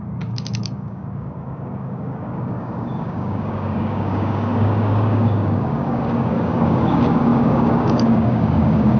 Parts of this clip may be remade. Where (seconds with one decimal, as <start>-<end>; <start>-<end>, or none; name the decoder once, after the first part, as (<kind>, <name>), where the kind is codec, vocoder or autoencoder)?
0.0-9.0 (codec, DAC)